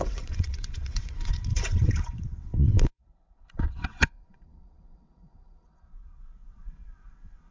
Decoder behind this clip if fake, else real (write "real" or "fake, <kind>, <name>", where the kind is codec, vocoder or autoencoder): fake, vocoder, WaveNeXt